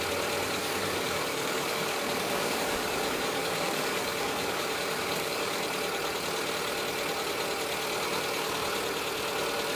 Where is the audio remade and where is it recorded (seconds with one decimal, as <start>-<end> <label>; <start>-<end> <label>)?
0.0-0.6 recorded; 0.6-5.6 remade; 5.6-9.8 recorded